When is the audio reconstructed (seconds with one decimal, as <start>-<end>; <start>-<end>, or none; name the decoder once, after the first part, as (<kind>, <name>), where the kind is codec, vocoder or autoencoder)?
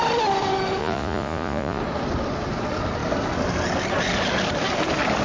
0.8-1.8 (vocoder, Vocos)